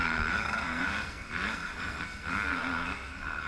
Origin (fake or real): fake